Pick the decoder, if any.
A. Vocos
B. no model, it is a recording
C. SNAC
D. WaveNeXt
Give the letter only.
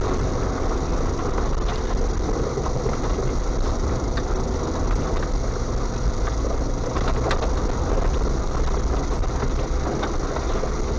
B